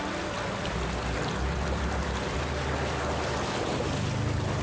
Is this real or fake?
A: real